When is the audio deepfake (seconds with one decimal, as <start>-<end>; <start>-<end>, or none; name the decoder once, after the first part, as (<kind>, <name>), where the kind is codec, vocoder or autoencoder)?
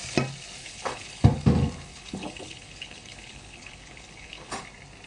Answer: 0.6-1.2 (codec, HILCodec); 1.9-4.5